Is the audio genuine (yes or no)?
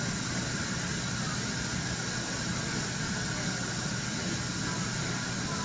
yes